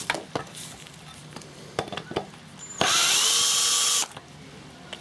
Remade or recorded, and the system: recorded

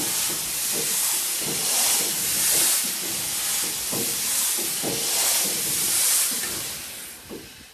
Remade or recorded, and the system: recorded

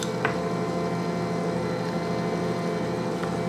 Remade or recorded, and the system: recorded